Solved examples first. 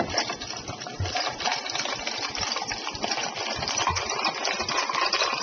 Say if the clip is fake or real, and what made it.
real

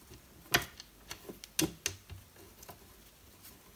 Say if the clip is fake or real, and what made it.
real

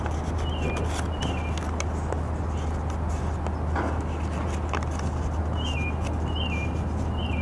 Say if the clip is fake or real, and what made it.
real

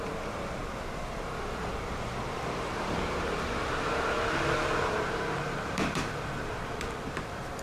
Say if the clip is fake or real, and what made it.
fake, vocoder, BigVGAN v2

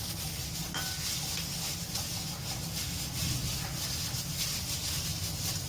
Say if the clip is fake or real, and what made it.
real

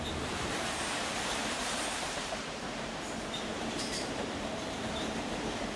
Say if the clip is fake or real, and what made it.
fake, vocoder, BigVGAN v2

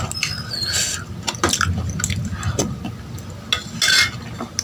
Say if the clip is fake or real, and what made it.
real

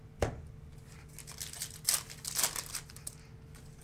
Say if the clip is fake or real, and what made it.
real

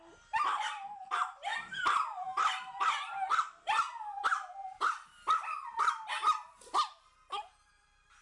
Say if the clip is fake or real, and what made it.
fake, vocoder, BigVGAN v2